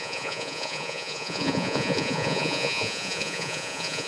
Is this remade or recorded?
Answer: remade